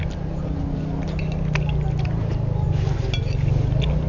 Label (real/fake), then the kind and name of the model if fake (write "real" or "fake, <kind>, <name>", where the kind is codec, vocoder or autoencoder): real